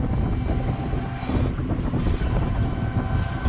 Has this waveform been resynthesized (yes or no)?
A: no